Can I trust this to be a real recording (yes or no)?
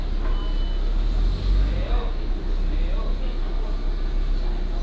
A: yes